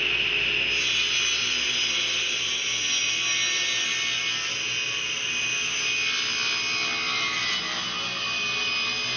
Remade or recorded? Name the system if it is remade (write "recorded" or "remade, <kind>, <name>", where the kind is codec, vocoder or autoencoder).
recorded